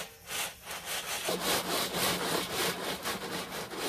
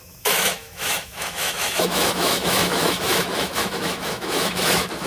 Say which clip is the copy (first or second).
second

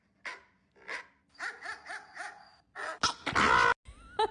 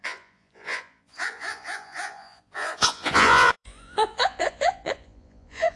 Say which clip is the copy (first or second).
second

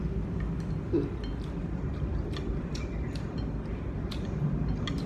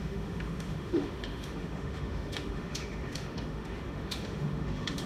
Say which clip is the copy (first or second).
second